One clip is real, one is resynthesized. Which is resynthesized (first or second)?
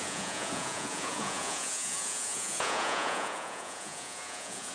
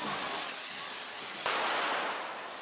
first